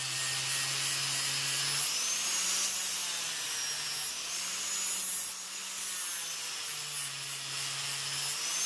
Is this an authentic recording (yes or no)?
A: yes